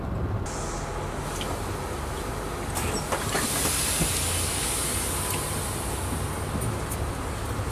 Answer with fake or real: real